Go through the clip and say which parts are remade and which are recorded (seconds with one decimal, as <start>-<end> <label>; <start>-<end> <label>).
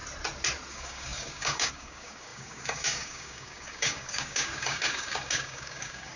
0.0-0.7 recorded; 0.7-6.2 remade